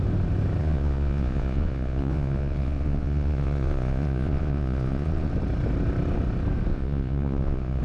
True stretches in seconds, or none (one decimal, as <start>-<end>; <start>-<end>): 0.0-0.6; 5.3-6.7